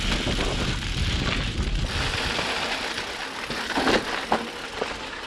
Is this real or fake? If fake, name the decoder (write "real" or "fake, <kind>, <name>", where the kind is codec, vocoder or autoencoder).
real